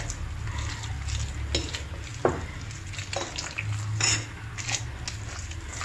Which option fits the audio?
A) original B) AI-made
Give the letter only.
A